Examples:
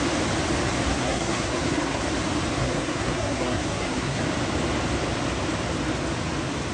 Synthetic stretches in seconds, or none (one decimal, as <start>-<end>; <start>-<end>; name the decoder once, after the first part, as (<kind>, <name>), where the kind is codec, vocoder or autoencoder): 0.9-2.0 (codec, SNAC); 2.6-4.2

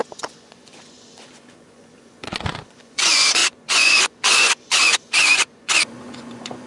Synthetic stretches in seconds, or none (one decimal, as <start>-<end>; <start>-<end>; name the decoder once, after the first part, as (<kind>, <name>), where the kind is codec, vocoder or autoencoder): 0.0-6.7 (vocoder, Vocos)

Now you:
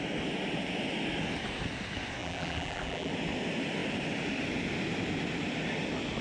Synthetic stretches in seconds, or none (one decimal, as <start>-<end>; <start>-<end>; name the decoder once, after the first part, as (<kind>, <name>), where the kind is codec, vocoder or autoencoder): 2.2-3.1 (vocoder, BigVGAN v2)

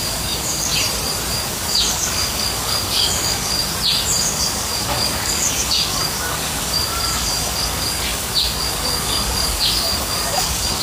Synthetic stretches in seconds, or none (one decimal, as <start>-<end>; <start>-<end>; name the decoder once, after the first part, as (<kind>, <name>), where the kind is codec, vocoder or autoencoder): 0.0-0.7 (codec, DAC); 1.3-3.6; 4.2-10.8

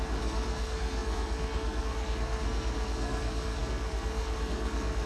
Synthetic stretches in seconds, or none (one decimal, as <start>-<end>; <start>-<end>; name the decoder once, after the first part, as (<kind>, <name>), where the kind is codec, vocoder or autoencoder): 0.0-5.1 (codec, SNAC)

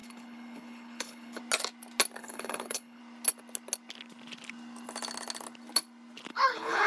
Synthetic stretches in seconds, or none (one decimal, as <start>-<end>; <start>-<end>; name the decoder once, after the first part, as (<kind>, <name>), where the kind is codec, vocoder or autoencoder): 0.0-1.4 (codec, HILCodec); 2.2-3.0; 6.3-6.9

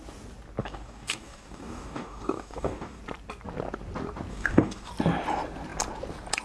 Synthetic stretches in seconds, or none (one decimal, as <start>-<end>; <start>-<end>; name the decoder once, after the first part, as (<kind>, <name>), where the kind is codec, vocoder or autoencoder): 0.6-3.0 (codec, DAC); 4.3-4.9

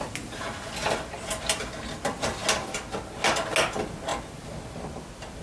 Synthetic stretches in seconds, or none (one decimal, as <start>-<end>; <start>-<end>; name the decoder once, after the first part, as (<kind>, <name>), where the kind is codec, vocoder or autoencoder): none